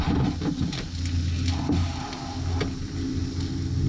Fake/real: real